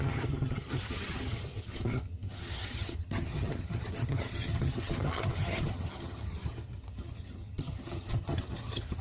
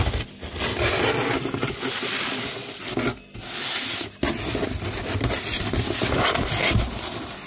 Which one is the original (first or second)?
second